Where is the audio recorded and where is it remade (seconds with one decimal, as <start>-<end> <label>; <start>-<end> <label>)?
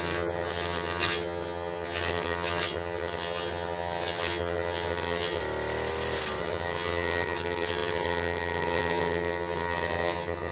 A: 0.0-5.4 remade; 5.4-6.4 recorded; 6.4-10.5 remade